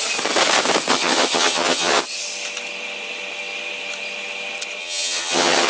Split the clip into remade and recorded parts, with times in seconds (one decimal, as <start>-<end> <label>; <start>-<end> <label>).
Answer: 0.0-0.9 recorded; 0.9-2.0 remade; 2.0-4.8 recorded; 4.8-5.7 remade